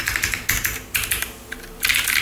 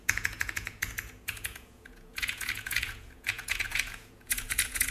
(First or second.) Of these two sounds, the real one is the first